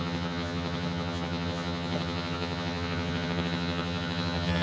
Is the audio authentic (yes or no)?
no